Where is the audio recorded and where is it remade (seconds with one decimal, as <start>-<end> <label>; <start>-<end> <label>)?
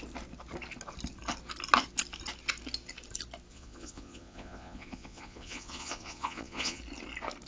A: 0.0-3.5 recorded; 3.5-6.8 remade; 6.8-7.5 recorded